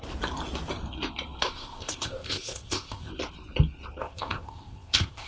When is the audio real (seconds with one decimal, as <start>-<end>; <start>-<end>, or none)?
0.0-1.4; 3.1-4.0